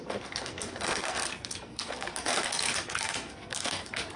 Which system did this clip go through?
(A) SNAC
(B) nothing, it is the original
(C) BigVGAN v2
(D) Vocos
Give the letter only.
A